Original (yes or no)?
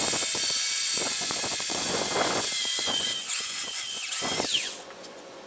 no